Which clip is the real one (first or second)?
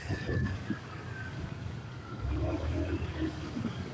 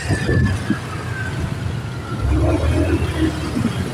second